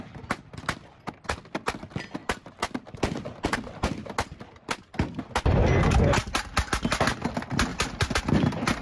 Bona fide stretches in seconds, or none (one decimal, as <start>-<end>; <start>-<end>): 0.0-7.7; 8.2-8.8